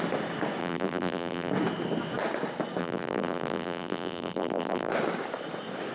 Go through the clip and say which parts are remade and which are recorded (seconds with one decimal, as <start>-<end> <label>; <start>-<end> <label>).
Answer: 0.0-0.6 recorded; 0.6-1.5 remade; 1.5-2.8 recorded; 2.8-4.9 remade; 4.9-5.9 recorded